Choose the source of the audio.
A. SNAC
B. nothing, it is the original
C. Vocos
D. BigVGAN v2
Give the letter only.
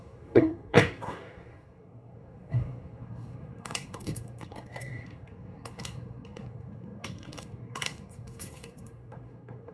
A